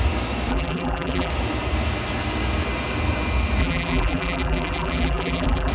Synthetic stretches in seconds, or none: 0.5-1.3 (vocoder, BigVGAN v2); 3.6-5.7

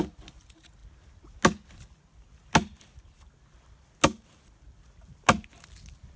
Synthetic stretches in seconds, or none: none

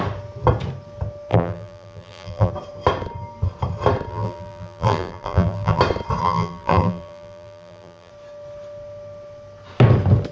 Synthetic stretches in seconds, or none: 1.3-2.5 (vocoder, BigVGAN v2); 4.1-5.8; 6.2-8.1

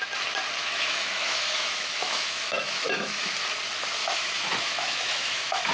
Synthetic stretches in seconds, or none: 0.6-3.3 (autoencoder, DAC-VAE); 4.0-5.7

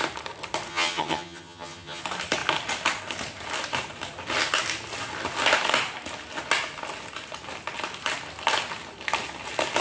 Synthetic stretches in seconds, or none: 0.7-2.0 (vocoder, HiFi-GAN)

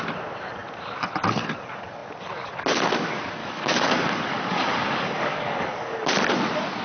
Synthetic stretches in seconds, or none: 3.4-6.1 (codec, DAC)

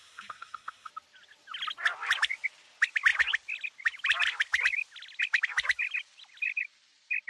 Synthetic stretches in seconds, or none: 0.0-0.9 (codec, SNAC)